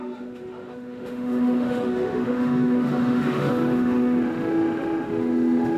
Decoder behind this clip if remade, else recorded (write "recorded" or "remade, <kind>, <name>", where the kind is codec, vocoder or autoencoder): remade, autoencoder, DAC-VAE